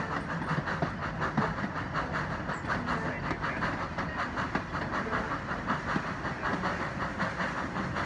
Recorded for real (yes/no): yes